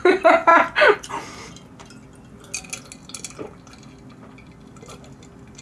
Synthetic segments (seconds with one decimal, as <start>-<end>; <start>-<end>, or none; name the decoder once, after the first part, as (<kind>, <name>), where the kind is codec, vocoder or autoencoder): none